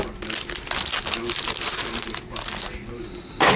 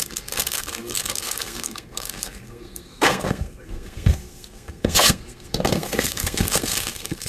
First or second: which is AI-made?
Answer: second